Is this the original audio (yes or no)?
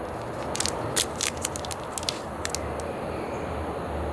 yes